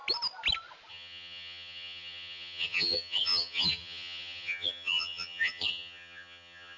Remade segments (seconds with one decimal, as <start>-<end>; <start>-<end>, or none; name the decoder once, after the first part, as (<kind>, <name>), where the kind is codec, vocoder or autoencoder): 0.9-6.8 (vocoder, HiFi-GAN)